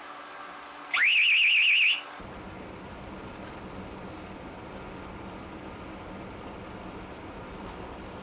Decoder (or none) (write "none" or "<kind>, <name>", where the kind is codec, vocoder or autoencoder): none